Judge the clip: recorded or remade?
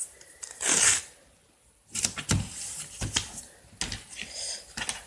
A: recorded